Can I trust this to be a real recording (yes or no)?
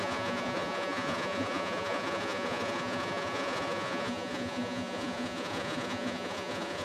no